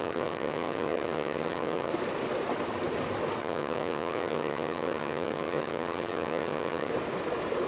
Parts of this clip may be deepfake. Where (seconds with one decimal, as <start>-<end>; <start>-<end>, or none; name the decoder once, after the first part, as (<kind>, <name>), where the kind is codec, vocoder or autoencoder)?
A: 0.0-1.9 (vocoder, HiFi-GAN); 3.4-6.9